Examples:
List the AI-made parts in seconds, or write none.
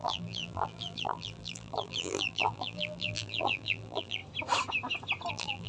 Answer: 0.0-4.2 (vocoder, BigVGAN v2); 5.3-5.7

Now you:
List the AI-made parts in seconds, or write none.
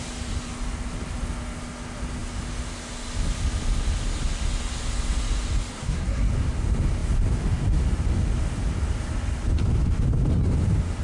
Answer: 5.7-6.3 (codec, SNAC)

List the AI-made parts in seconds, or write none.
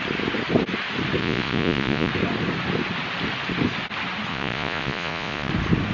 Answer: 1.2-2.1 (vocoder, Vocos); 4.3-5.5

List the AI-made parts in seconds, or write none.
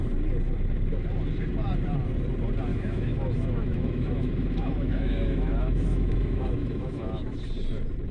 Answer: 2.7-7.4 (autoencoder, DAC-VAE)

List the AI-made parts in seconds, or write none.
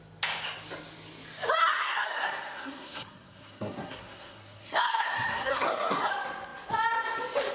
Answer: 1.6-6.1 (codec, SNAC)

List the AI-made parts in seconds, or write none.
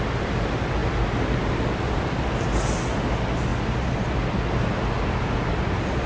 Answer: none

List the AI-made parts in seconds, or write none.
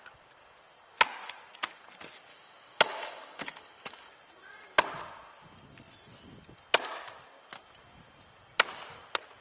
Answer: 2.3-4.1 (autoencoder, DAC-VAE)